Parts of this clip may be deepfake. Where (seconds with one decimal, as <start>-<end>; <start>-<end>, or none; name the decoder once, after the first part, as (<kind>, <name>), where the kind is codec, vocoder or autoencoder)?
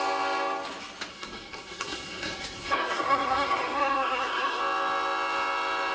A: 1.1-4.6 (codec, SNAC)